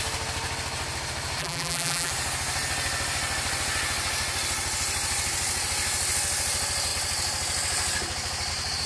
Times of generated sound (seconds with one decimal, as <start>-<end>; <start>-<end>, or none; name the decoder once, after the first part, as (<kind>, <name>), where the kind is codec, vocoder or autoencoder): 1.4-2.1 (vocoder, BigVGAN v2)